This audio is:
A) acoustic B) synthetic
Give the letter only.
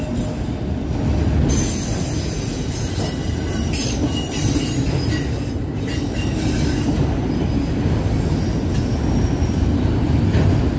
A